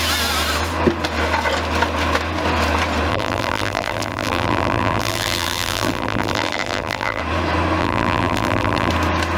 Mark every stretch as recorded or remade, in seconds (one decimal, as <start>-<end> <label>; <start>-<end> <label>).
0.0-3.1 recorded; 3.1-7.2 remade; 7.2-7.8 recorded; 7.8-8.9 remade; 8.9-9.4 recorded